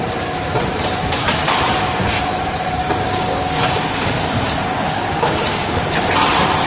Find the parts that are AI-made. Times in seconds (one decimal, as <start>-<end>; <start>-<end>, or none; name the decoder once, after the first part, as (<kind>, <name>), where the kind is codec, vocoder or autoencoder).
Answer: 2.8-6.0 (codec, DAC)